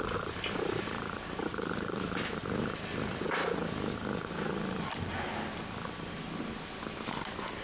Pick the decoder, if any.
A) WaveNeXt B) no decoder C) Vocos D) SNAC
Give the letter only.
B